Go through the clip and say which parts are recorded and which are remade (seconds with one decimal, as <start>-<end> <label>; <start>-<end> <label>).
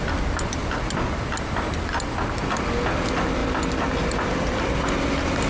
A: 0.0-5.5 recorded